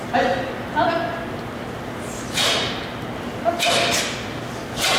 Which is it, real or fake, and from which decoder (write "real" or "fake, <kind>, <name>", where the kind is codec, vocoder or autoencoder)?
real